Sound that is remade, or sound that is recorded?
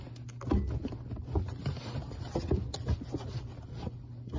recorded